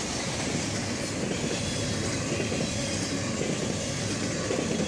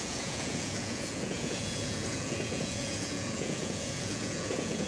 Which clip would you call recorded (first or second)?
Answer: first